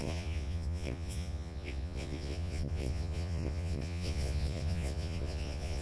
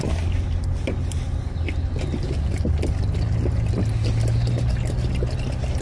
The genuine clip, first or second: second